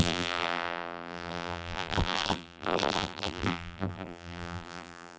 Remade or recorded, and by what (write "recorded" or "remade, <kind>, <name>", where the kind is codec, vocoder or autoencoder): remade, vocoder, BigVGAN v2